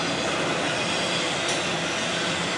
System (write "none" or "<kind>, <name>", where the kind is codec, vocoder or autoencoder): none